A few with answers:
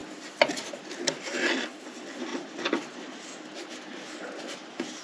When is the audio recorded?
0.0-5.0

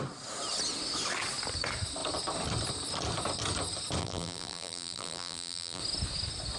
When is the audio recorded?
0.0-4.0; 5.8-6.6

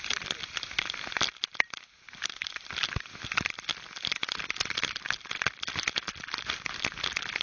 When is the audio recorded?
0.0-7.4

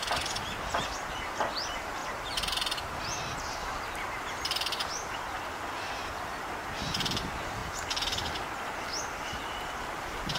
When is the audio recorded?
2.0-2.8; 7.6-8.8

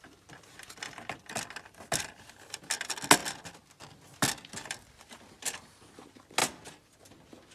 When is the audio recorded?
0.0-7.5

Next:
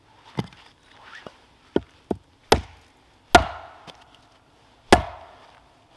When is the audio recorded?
0.0-6.0